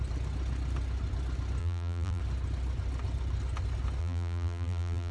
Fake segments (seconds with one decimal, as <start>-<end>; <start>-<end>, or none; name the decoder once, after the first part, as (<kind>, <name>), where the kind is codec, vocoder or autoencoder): 1.6-2.2 (vocoder, BigVGAN v2); 4.0-5.1

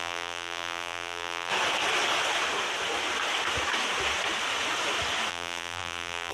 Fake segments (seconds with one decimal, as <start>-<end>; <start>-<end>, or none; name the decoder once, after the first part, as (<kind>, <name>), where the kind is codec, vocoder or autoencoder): 0.0-1.5 (vocoder, BigVGAN v2); 5.3-6.3

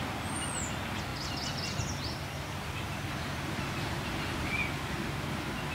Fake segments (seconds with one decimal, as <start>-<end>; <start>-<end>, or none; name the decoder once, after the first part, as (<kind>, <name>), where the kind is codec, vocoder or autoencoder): none

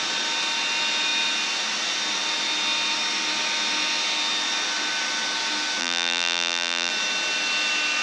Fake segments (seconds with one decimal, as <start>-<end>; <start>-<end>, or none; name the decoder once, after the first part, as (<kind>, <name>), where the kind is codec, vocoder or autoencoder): 5.8-6.9 (vocoder, BigVGAN v2)

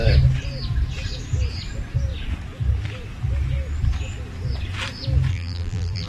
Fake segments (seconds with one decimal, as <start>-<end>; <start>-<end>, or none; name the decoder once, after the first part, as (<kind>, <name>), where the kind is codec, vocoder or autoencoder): 5.3-6.1 (vocoder, BigVGAN v2)

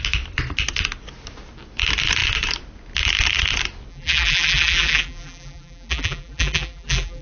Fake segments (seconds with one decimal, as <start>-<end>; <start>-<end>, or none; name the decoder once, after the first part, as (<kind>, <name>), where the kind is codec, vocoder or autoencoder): 3.9-7.2 (vocoder, BigVGAN v2)